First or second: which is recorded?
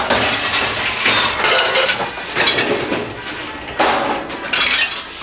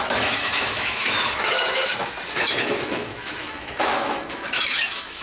first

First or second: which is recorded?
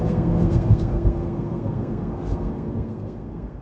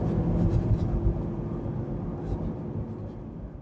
second